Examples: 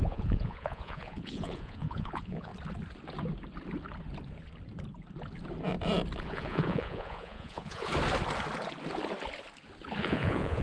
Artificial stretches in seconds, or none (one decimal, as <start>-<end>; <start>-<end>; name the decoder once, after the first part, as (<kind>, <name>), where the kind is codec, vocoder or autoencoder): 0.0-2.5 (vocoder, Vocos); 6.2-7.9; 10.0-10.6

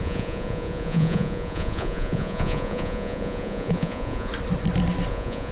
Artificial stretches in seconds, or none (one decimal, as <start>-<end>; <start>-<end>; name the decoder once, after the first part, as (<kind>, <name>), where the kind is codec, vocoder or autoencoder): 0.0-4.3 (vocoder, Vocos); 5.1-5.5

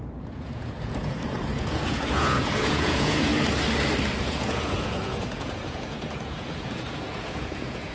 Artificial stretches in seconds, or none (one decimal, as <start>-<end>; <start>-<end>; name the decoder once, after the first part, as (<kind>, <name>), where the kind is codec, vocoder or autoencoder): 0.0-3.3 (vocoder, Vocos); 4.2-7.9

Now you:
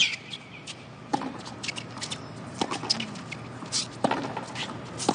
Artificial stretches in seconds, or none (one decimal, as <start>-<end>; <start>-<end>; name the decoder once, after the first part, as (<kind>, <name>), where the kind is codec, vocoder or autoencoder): 1.1-2.8 (vocoder, BigVGAN v2)